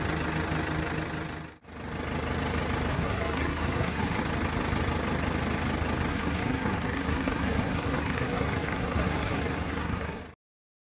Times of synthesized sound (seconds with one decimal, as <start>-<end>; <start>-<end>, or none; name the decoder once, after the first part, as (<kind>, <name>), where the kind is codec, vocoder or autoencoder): 2.9-4.2 (codec, SNAC); 6.1-10.2